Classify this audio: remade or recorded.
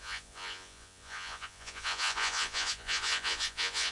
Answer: remade